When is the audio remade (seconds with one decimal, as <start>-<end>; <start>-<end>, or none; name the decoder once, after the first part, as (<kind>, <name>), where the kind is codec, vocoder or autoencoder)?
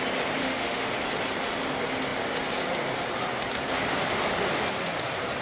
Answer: 0.4-0.9 (autoencoder, DAC-VAE)